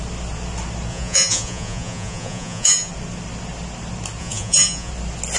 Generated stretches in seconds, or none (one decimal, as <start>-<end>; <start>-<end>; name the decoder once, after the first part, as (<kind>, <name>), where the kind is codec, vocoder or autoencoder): 0.9-2.9 (vocoder, Vocos); 4.2-4.9